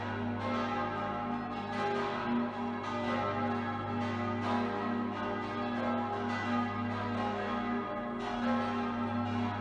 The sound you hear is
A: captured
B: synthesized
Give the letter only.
A